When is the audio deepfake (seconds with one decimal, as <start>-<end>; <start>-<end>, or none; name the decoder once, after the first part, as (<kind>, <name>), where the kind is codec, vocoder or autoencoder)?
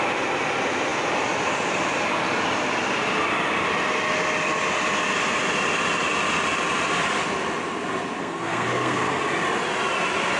8.2-9.2 (codec, SNAC)